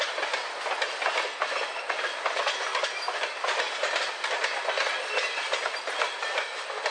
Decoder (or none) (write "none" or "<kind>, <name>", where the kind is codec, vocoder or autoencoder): none